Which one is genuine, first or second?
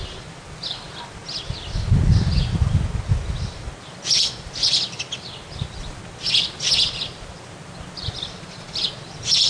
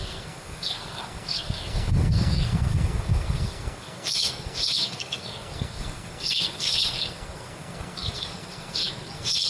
first